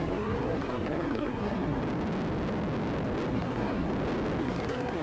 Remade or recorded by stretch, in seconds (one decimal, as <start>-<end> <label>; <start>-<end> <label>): 0.0-1.8 remade; 1.8-3.3 recorded; 3.3-3.9 remade; 3.9-4.4 recorded; 4.4-5.0 remade